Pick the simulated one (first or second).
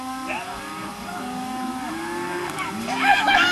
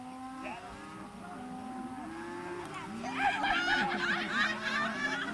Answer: first